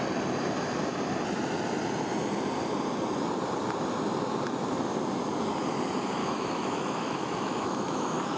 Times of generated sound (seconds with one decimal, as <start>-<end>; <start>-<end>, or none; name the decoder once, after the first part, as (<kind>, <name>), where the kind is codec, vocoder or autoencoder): 6.2-8.4 (autoencoder, DAC-VAE)